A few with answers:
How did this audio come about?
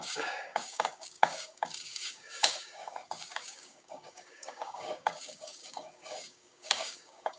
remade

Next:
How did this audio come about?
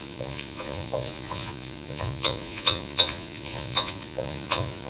remade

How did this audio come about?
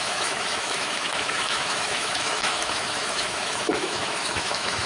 remade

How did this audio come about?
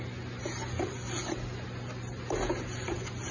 recorded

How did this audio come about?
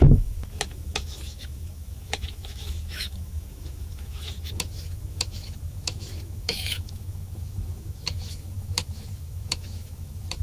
remade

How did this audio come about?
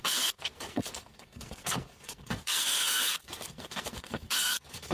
remade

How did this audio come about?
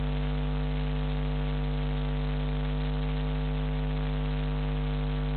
recorded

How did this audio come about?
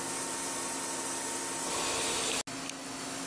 recorded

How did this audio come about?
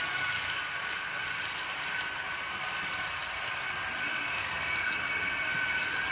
recorded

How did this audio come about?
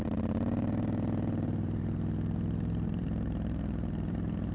remade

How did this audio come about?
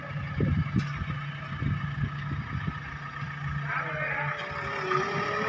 recorded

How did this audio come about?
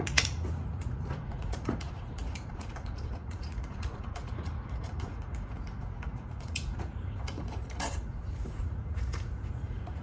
remade